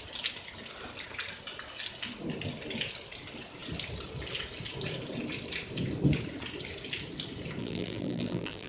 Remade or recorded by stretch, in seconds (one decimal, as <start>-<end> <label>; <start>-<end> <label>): 0.0-7.6 recorded; 7.6-8.7 remade